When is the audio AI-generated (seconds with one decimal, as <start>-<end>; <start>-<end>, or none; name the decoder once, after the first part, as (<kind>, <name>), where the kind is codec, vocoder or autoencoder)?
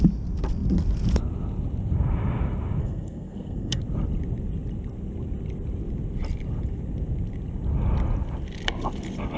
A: 2.8-3.8 (codec, SNAC)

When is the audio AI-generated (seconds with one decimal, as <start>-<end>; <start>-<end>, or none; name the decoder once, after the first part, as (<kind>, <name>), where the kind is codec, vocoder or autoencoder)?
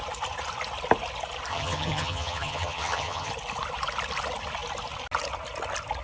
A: 1.5-3.3 (vocoder, HiFi-GAN)